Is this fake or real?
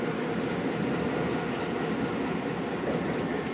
real